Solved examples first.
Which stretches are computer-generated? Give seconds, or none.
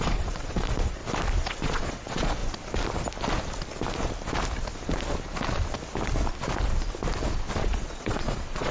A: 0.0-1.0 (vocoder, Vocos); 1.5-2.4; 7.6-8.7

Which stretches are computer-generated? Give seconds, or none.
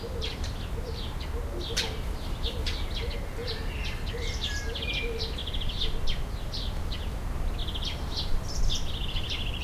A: 5.4-6.0 (vocoder, BigVGAN v2); 7.6-8.6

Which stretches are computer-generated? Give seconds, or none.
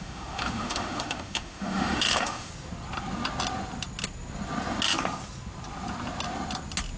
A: 0.0-2.5 (autoencoder, DAC-VAE)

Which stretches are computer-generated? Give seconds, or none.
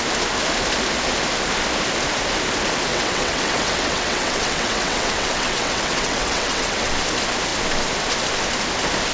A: 2.9-6.9 (vocoder, WaveNeXt)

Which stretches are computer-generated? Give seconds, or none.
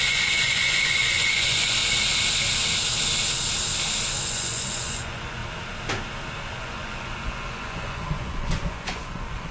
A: 0.0-1.8 (vocoder, Vocos); 4.2-5.4; 6.5-9.5